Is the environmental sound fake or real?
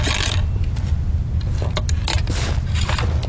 real